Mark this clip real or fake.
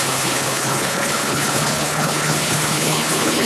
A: fake